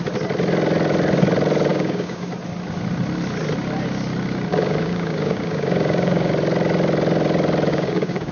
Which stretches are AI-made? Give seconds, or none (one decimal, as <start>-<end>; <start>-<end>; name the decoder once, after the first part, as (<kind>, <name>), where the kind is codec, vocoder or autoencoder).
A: 1.7-2.3 (codec, DAC); 4.5-6.3; 7.7-8.3